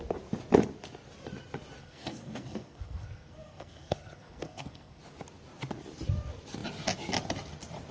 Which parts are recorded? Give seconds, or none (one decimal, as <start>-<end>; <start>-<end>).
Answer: 0.0-1.8; 5.0-7.9